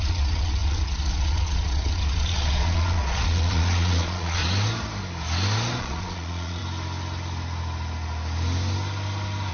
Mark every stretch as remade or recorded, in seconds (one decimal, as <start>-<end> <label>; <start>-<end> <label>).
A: 0.0-4.4 remade; 4.4-5.8 recorded; 5.8-6.6 remade; 6.6-9.5 recorded